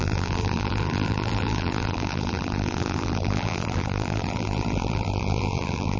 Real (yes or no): no